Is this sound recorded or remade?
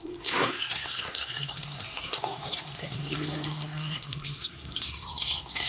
remade